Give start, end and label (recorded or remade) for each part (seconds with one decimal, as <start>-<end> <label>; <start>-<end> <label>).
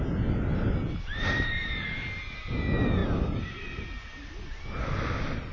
0.0-5.5 recorded